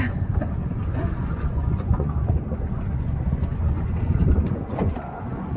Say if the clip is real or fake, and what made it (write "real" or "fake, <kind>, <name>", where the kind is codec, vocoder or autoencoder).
fake, vocoder, Vocos